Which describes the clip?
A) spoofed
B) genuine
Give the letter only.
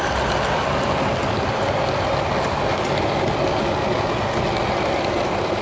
B